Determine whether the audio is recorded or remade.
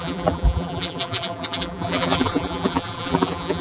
remade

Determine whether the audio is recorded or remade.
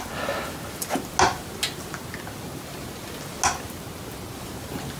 recorded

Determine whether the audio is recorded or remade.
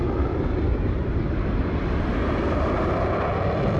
recorded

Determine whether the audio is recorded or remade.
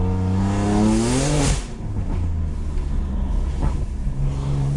recorded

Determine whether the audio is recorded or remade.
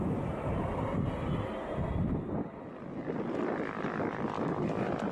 recorded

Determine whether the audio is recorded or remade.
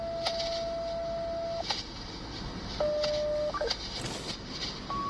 recorded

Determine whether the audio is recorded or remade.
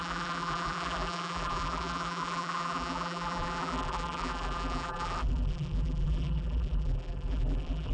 remade